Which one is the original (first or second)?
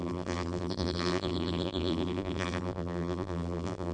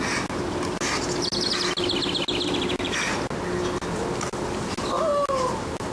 second